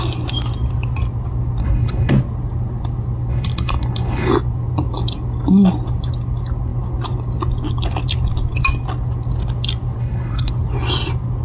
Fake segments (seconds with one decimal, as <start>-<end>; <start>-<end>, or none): 1.6-2.1; 3.3-4.3; 10.0-10.5